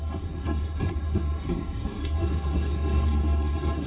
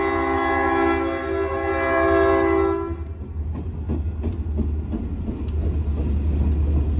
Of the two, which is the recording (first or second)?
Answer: second